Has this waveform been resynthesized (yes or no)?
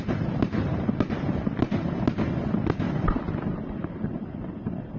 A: no